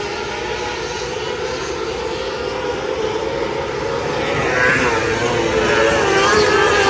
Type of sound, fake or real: fake